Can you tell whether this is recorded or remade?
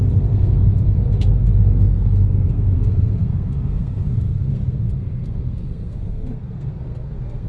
remade